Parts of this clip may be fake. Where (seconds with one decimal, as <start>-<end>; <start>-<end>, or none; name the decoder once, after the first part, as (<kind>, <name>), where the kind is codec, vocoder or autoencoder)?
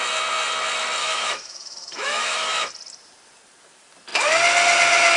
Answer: 1.0-2.7 (autoencoder, DAC-VAE)